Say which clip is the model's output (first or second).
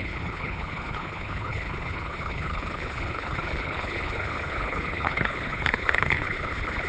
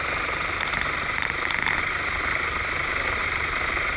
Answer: first